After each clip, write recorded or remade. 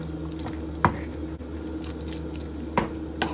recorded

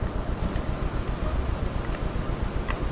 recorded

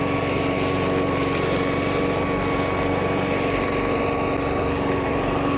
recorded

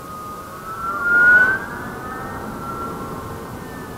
recorded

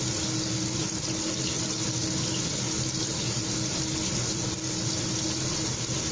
recorded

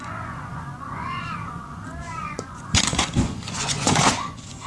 remade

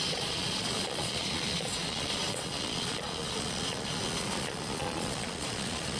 remade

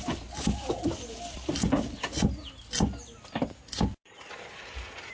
recorded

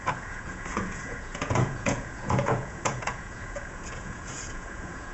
remade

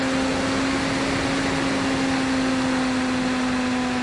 recorded